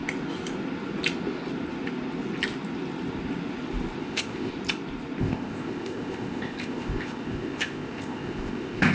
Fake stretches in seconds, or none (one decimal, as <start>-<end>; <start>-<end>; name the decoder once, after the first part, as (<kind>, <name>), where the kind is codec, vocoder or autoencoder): 4.0-4.5 (codec, ZipCodec); 5.2-8.9